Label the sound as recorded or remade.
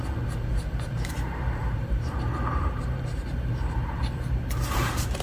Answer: remade